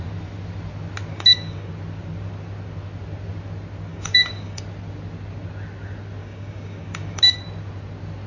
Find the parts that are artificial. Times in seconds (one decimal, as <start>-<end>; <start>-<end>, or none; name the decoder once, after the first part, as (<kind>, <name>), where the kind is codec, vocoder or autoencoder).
1.1-1.7 (codec, DAC); 3.9-4.6; 6.2-7.2